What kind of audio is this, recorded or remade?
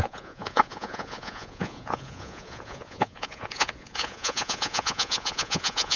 remade